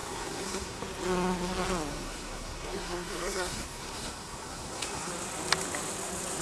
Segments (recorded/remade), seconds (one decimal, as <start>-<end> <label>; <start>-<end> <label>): 0.0-0.8 remade; 0.8-1.9 recorded; 1.9-5.1 remade; 5.1-6.4 recorded